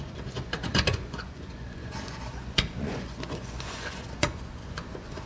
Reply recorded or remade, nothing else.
remade